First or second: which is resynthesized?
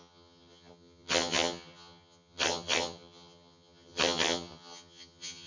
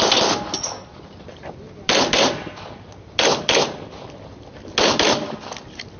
first